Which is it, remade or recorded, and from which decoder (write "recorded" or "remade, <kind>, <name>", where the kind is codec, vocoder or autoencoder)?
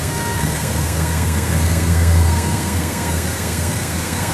remade, codec, SNAC